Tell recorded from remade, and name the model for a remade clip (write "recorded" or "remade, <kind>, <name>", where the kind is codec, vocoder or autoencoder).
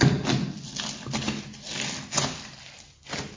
recorded